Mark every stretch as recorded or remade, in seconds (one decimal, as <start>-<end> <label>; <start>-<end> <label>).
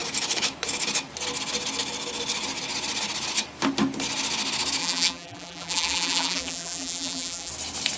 0.0-4.8 recorded; 4.8-7.5 remade; 7.5-8.0 recorded